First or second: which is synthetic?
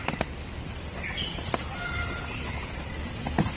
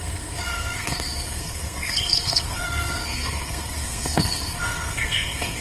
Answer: second